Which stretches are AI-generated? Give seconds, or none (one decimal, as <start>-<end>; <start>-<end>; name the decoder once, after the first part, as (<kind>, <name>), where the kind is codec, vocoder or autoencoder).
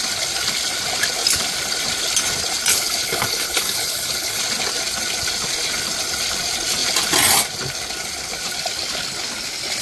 2.7-4.4 (codec, HILCodec)